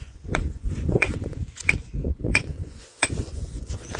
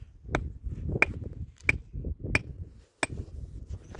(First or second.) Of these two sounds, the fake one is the first